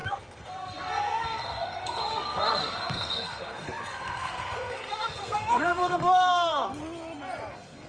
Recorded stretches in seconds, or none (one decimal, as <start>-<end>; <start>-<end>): 6.8-7.5